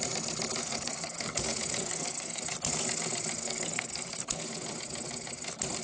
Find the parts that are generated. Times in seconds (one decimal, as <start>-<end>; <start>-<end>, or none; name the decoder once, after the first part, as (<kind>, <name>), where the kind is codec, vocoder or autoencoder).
0.6-1.4 (codec, SNAC); 1.8-2.4; 3.4-4.4